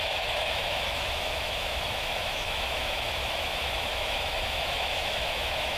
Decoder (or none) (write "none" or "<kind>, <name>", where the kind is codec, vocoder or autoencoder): autoencoder, DAC-VAE